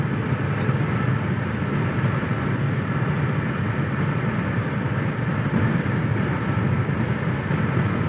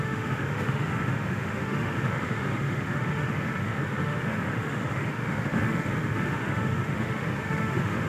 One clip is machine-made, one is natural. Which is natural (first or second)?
first